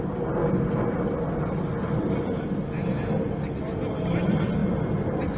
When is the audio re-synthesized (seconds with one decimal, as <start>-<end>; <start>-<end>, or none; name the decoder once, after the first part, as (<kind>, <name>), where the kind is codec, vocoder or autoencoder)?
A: none